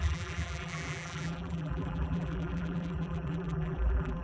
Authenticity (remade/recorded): remade